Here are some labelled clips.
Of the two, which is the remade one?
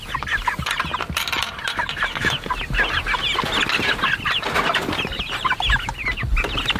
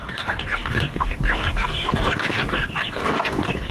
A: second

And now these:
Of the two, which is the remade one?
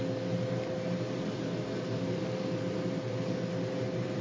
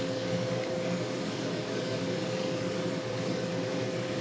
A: second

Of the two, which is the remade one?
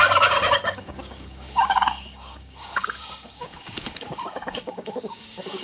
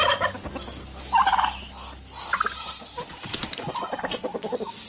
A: first